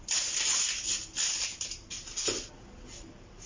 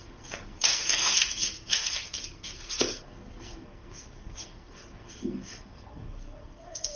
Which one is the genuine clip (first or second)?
first